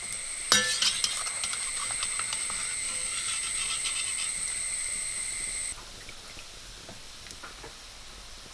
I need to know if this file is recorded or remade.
recorded